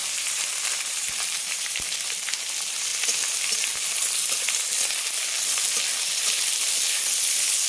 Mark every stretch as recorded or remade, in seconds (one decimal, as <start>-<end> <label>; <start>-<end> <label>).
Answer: 0.0-1.7 remade; 1.7-7.7 recorded